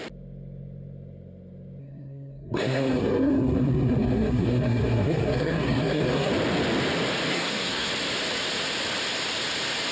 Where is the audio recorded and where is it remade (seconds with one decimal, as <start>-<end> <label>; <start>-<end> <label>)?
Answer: 0.0-1.8 recorded; 1.8-6.3 remade; 6.3-7.3 recorded; 7.3-7.9 remade; 7.9-9.9 recorded